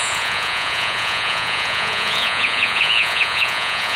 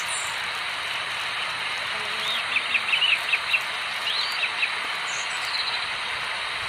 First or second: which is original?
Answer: second